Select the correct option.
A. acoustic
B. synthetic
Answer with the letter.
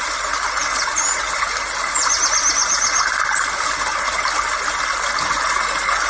A